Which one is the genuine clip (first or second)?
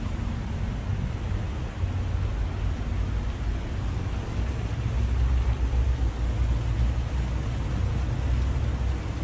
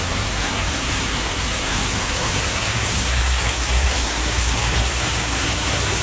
first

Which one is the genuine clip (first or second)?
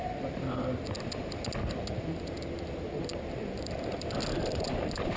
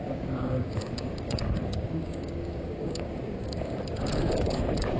first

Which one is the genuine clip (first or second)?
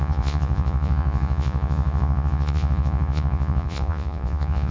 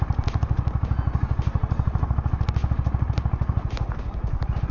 second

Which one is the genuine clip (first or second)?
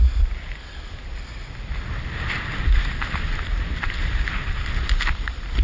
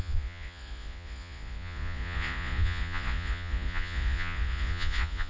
first